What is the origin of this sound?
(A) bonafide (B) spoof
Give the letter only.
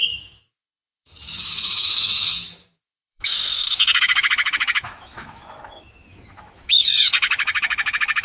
B